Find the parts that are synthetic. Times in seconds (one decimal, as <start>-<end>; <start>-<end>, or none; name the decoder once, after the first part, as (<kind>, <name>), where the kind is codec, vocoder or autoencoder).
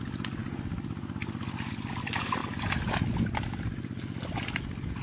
0.4-1.7 (vocoder, BigVGAN v2)